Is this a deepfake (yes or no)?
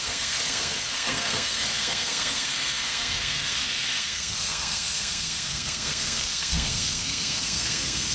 yes